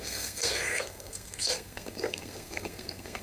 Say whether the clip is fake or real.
fake